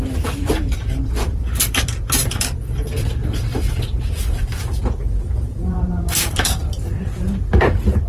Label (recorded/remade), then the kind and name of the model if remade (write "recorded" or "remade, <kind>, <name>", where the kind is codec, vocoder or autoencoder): remade, vocoder, BigVGAN v2